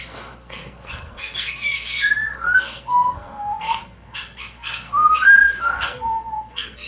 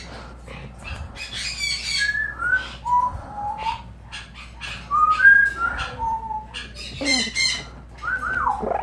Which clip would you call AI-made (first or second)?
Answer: first